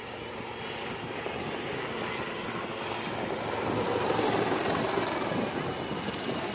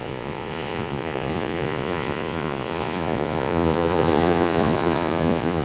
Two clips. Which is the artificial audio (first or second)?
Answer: second